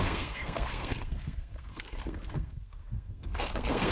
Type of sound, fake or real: fake